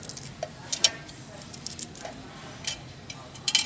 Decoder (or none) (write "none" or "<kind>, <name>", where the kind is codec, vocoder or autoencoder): none